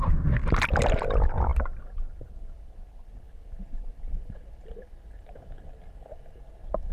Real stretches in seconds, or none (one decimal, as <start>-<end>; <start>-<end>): 0.0-6.9